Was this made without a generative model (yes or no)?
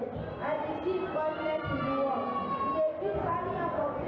yes